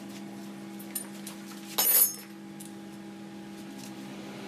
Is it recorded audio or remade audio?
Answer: recorded